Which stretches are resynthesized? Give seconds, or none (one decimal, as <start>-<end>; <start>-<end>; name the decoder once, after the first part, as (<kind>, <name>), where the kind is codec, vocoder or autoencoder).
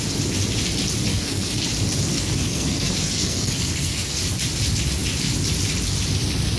1.1-1.6 (codec, SNAC); 2.1-4.2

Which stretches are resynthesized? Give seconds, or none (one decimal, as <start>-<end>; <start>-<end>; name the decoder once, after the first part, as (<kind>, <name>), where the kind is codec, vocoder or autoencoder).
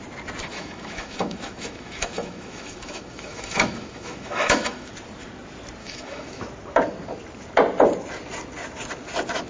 0.4-4.9 (autoencoder, DAC-VAE); 5.8-6.4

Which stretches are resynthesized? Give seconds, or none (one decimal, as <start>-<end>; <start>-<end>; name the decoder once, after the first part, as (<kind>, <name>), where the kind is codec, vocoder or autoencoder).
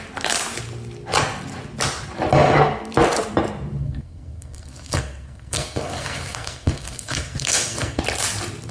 3.8-8.0 (codec, SNAC)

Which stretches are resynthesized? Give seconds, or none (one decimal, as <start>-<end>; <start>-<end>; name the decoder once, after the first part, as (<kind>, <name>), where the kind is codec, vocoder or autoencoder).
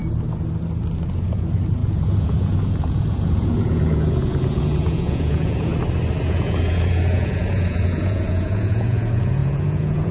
1.1-5.7 (vocoder, Vocos); 6.2-10.1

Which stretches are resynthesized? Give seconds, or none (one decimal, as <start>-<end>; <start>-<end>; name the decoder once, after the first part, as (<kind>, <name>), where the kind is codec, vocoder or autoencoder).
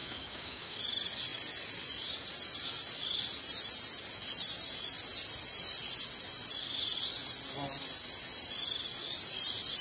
0.0-0.8 (autoencoder, DAC-VAE)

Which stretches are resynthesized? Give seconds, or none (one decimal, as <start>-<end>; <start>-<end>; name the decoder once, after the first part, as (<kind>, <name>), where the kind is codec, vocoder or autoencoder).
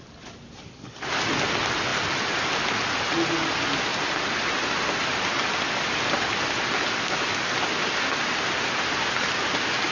1.9-2.5 (vocoder, BigVGAN v2)